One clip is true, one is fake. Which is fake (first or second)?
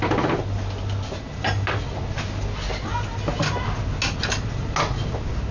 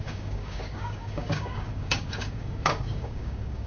second